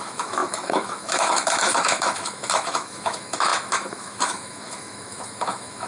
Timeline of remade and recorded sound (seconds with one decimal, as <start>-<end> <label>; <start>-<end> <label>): 0.0-5.9 remade